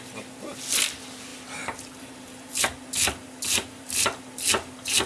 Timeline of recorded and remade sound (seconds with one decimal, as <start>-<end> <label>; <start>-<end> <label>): 0.0-5.1 recorded